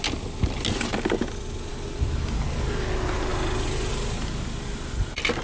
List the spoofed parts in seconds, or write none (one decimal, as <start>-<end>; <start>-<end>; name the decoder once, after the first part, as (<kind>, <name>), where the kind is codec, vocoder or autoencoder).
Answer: none